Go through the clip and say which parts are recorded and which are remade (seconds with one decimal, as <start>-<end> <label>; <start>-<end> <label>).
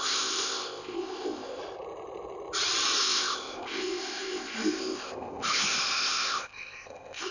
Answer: 0.0-1.6 remade; 1.6-3.0 recorded; 3.0-7.3 remade